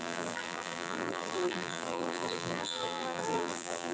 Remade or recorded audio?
remade